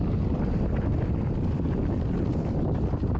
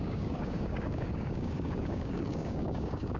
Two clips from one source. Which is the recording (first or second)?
first